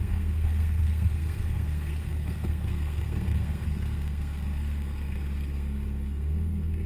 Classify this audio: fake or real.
fake